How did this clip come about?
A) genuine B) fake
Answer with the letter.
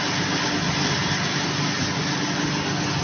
A